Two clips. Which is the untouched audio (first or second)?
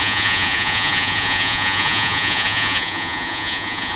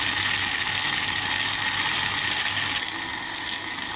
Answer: second